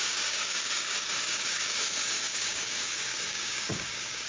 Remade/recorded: remade